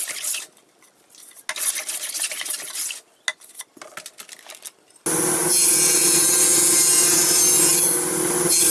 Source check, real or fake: real